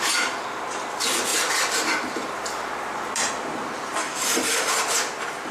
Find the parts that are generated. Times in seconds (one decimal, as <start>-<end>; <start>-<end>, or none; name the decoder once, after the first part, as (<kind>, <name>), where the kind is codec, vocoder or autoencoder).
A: 4.0-4.7 (codec, DAC)